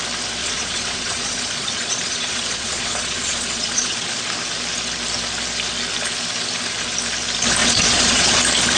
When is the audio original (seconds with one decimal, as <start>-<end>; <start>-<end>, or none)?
0.0-0.4; 4.2-7.6; 8.4-8.8